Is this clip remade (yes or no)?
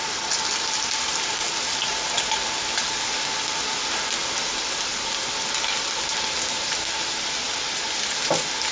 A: no